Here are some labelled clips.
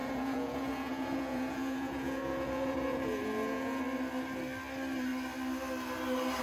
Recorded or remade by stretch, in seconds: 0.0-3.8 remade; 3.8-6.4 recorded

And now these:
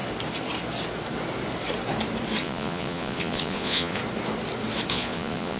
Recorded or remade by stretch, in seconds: 0.0-2.4 recorded; 2.4-4.0 remade; 4.0-4.9 recorded; 4.9-5.6 remade

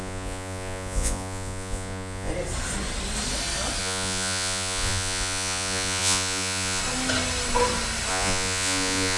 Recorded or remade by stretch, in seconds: 0.0-2.3 remade; 2.3-3.8 recorded; 3.8-6.8 remade; 6.8-8.1 recorded; 8.1-9.2 remade

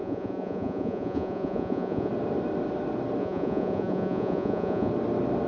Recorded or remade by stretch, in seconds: 0.0-2.1 remade; 2.1-3.2 recorded; 3.2-4.9 remade; 4.9-5.5 recorded

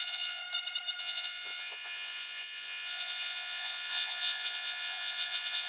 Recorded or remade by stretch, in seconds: 0.0-0.4 remade; 0.4-1.0 recorded; 1.0-5.7 remade

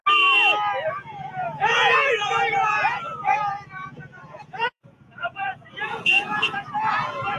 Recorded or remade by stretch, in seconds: 0.0-0.9 recorded; 0.9-7.4 remade

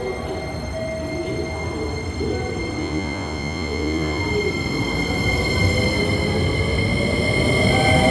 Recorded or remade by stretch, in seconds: 0.0-2.8 recorded; 2.8-4.2 remade; 4.2-8.1 recorded